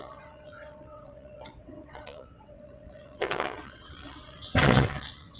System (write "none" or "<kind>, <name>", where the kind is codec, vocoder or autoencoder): vocoder, WaveNeXt